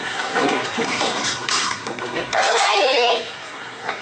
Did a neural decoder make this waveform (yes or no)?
yes